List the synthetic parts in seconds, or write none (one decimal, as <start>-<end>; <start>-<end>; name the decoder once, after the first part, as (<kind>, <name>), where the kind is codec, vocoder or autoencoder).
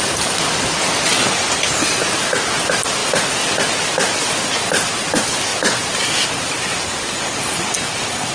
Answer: 5.5-6.5 (vocoder, BigVGAN v2)